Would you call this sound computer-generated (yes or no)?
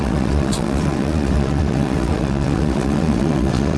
yes